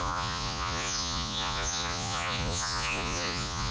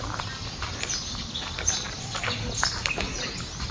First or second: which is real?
second